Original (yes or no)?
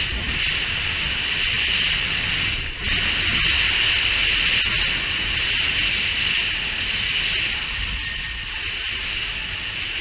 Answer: yes